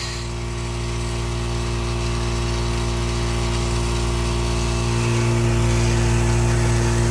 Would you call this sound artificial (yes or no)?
no